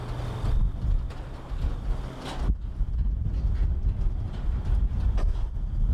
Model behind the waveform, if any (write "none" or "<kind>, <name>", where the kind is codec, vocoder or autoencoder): none